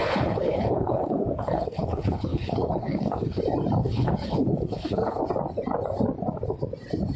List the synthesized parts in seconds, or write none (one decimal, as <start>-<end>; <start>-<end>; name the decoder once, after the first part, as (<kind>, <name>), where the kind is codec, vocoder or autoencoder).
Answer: 0.0-3.4 (codec, HILCodec); 3.8-5.2